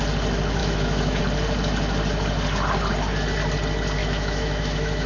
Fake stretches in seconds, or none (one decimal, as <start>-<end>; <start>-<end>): 0.6-1.2; 4.0-5.1